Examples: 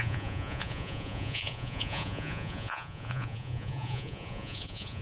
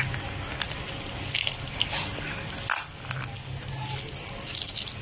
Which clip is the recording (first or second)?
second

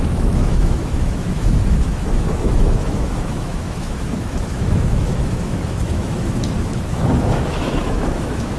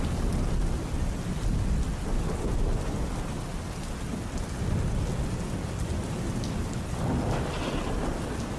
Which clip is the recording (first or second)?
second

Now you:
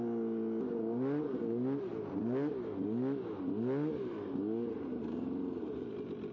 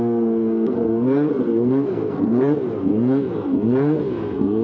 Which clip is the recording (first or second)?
first